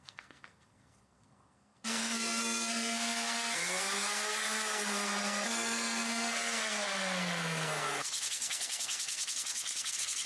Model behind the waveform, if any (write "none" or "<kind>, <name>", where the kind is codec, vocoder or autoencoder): codec, SNAC